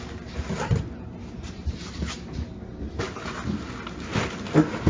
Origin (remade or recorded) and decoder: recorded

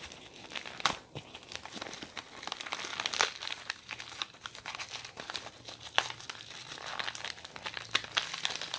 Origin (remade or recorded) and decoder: recorded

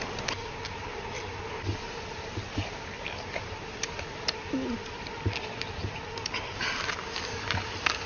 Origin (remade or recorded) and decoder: recorded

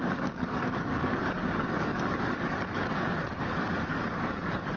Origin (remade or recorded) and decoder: remade, codec, DAC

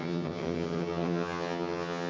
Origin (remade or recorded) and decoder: remade, vocoder, HiFi-GAN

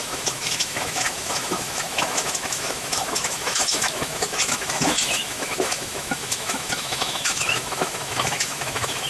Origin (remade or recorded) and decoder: remade, autoencoder, DAC-VAE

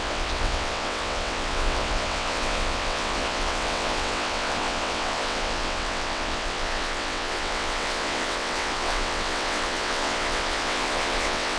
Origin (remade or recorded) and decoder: remade, vocoder, WaveNeXt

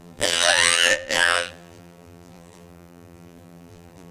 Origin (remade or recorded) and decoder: remade, vocoder, BigVGAN v2